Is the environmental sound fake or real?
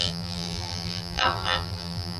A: fake